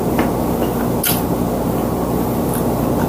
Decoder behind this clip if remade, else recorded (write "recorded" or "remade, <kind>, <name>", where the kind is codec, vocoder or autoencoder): recorded